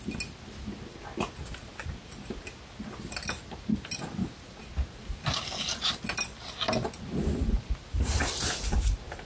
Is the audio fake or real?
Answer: real